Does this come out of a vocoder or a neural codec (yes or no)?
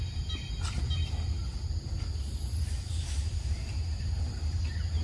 no